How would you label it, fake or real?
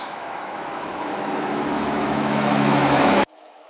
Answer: fake